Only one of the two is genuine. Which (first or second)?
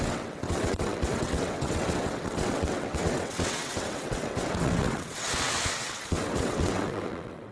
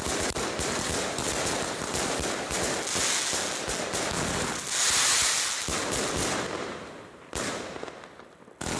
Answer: second